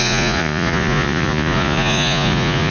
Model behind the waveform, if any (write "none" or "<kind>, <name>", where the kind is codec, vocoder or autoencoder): vocoder, Vocos